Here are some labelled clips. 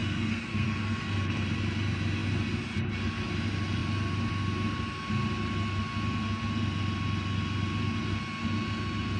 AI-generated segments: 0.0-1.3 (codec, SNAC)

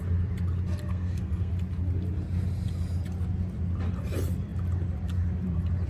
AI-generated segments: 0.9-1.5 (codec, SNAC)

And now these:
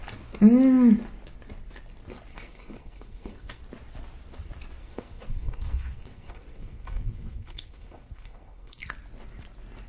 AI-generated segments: 2.3-3.6 (codec, SNAC); 4.8-8.9